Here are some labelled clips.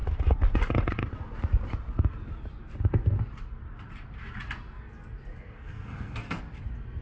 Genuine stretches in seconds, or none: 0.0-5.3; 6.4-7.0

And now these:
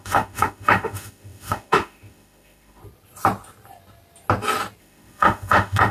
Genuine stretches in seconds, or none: 2.8-4.8

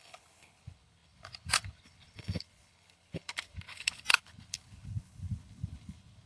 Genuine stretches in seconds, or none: none